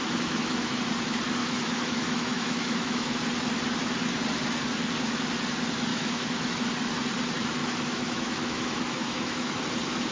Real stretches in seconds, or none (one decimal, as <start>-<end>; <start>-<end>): 0.8-1.4; 3.2-5.9; 6.6-7.6; 9.6-10.1